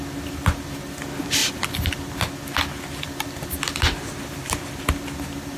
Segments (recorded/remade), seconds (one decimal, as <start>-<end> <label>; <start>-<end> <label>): 0.0-5.6 recorded